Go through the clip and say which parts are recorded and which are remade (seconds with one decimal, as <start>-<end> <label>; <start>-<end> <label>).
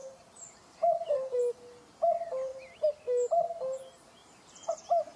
0.0-1.4 remade; 1.4-4.2 recorded; 4.2-4.8 remade; 4.8-5.2 recorded